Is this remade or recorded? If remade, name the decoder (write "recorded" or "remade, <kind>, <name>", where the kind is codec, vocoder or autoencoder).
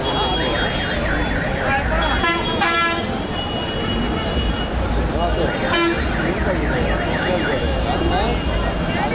recorded